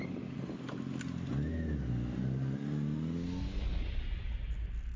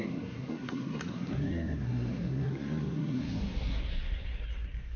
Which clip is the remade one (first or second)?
second